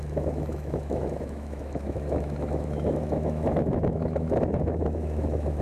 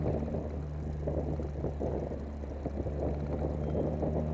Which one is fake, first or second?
first